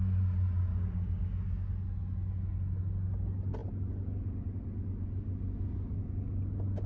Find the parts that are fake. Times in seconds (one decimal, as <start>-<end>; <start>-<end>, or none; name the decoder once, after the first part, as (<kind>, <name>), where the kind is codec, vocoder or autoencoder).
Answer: 0.7-1.7 (codec, DAC)